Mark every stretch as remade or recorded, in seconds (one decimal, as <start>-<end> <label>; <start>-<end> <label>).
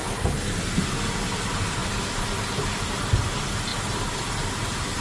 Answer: 0.0-5.0 recorded